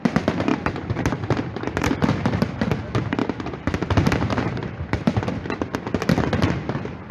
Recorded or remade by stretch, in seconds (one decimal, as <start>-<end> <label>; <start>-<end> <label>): 0.0-0.5 recorded; 0.5-2.6 remade; 2.6-3.2 recorded; 3.2-5.3 remade; 5.3-7.1 recorded